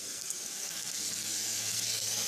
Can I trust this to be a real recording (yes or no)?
no